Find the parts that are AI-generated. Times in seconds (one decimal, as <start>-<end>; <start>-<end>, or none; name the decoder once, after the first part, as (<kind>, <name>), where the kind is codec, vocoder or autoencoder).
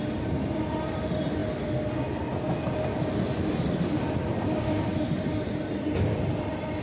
none